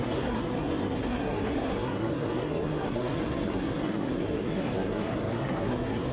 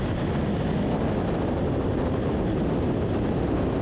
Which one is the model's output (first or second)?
first